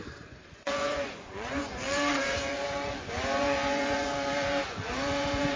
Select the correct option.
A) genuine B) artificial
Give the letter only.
B